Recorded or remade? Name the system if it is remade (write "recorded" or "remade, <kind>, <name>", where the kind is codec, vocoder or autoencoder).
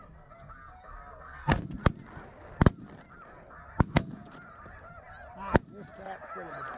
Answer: recorded